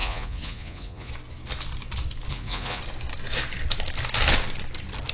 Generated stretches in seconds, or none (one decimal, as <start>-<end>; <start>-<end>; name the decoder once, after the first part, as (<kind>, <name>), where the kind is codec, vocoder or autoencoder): 0.0-1.1 (vocoder, Vocos); 2.3-2.8